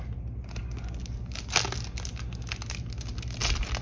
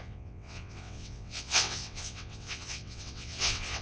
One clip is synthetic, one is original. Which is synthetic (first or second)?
second